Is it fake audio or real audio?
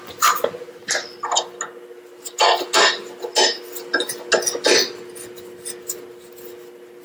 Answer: real